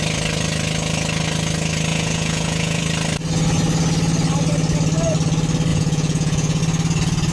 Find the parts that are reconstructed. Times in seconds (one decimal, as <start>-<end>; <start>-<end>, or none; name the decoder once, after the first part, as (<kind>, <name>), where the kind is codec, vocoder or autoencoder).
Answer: 1.9-2.8 (vocoder, Vocos); 5.7-6.6